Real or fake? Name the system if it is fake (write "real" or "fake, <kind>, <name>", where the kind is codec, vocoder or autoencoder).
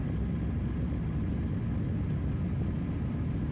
real